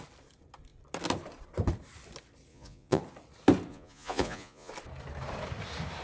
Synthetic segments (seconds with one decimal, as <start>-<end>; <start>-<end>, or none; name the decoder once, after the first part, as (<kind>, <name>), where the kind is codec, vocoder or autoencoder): 2.5-3.0 (vocoder, Vocos); 3.7-4.7